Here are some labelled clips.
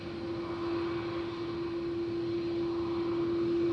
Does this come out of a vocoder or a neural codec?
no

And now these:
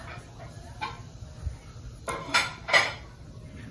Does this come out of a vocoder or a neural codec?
no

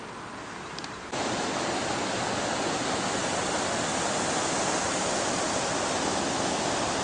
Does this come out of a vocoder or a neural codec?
no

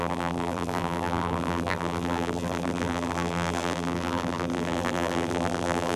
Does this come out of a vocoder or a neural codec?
yes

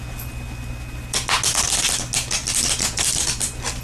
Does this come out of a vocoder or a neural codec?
no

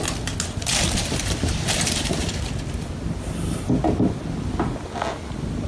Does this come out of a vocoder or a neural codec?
no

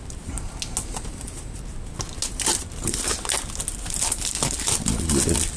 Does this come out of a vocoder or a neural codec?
no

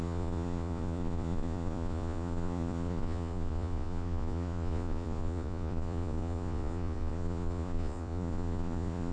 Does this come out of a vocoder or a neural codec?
yes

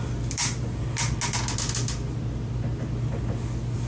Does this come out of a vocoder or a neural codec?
no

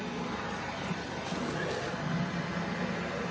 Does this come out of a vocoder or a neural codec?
no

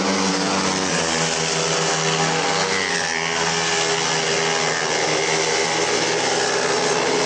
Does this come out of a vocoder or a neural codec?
no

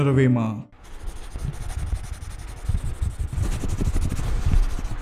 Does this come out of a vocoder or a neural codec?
no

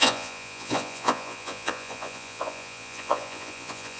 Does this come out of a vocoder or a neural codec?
yes